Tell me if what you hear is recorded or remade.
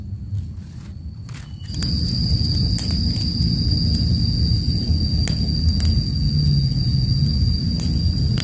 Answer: recorded